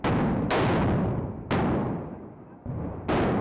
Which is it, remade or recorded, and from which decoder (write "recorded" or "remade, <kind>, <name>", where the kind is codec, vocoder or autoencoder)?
recorded